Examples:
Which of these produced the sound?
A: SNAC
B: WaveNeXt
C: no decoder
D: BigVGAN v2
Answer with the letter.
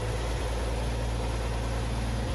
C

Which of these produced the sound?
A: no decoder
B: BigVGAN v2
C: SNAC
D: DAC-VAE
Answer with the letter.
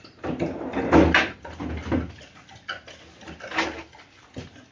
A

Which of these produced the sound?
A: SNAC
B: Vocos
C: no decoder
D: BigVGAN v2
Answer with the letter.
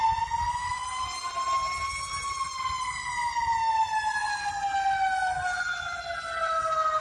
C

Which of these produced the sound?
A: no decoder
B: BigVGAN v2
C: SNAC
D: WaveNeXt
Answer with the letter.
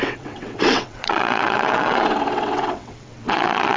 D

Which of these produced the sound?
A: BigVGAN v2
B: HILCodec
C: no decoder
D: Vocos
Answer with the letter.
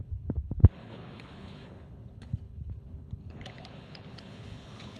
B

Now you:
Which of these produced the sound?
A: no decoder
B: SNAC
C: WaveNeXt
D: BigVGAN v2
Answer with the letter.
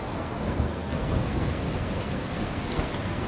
B